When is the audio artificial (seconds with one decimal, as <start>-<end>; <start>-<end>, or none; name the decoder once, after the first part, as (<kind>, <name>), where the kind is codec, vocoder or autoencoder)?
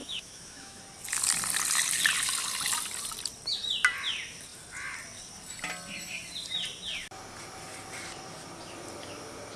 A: 0.0-0.8 (autoencoder, DAC-VAE)